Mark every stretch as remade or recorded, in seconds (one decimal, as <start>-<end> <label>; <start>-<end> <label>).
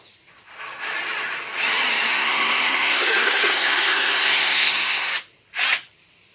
0.0-2.1 recorded; 2.1-5.1 remade; 5.1-6.3 recorded